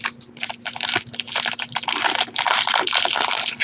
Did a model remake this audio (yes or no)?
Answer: no